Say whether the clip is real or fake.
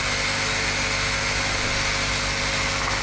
real